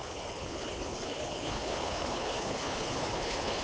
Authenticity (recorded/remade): remade